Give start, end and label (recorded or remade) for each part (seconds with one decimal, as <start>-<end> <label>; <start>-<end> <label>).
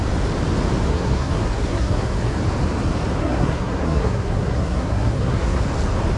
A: 0.0-0.9 recorded; 0.9-2.4 remade; 2.4-3.2 recorded; 3.2-5.6 remade; 5.6-6.2 recorded